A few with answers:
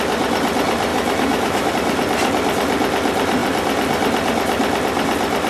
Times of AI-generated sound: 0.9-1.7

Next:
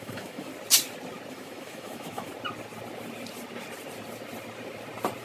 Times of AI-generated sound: 0.0-0.5; 1.3-2.3

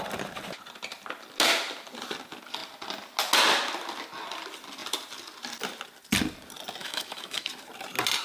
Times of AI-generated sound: 6.8-7.5

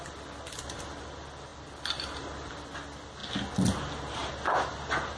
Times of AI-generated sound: none

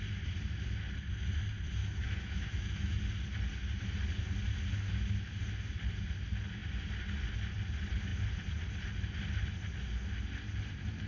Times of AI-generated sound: 1.8-3.0

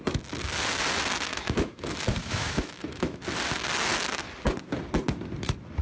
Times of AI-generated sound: 1.3-3.2

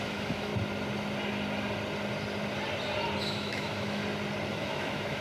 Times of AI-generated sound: 0.0-0.5; 3.2-4.0; 4.5-5.2

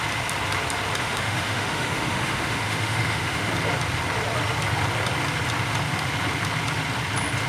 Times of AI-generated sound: 1.0-3.5